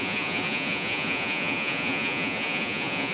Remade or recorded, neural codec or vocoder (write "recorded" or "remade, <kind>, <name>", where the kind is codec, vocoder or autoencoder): remade, vocoder, Vocos